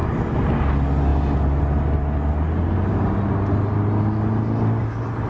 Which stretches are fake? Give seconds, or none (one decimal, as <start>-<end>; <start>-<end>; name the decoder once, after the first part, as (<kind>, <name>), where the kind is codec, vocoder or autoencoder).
none